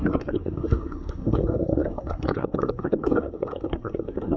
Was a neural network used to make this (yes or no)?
yes